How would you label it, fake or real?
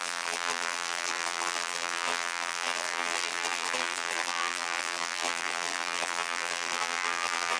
fake